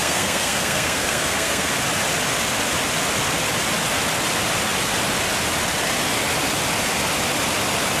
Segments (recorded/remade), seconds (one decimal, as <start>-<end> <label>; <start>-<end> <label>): 0.0-1.7 remade; 1.7-8.0 recorded